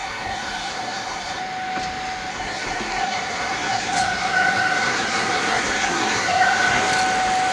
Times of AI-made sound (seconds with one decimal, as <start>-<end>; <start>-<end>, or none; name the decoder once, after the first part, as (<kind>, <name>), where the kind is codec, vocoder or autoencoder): 0.0-1.4 (codec, SNAC); 2.3-6.8